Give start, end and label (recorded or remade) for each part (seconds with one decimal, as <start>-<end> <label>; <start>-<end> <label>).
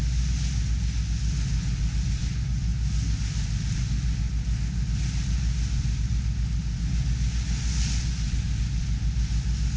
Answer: 0.0-9.8 recorded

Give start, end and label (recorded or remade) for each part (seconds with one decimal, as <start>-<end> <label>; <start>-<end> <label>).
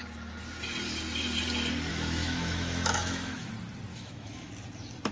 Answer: 0.0-1.9 recorded; 1.9-3.5 remade; 3.5-3.9 recorded; 3.9-4.5 remade; 4.5-5.1 recorded